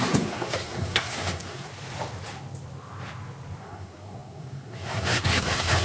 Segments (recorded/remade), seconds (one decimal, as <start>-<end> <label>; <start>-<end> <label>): 0.0-1.7 remade; 1.7-3.6 recorded; 3.6-5.8 remade